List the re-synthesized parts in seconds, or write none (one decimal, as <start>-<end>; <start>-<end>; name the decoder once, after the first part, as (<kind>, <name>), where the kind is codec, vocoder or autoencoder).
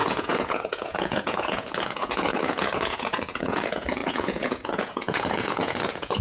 0.0-6.2 (vocoder, Vocos)